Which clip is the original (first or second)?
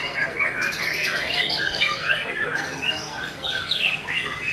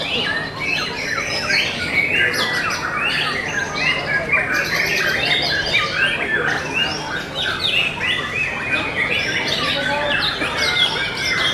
second